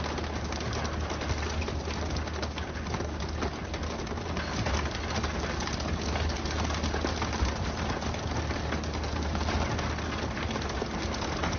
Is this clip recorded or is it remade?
recorded